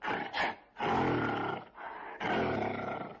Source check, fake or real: real